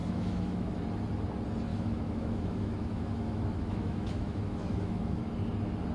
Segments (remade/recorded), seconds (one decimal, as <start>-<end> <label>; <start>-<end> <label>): 0.0-0.8 remade; 0.8-1.7 recorded; 1.7-5.2 remade; 5.2-5.9 recorded